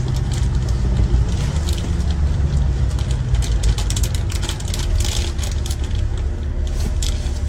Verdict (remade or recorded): recorded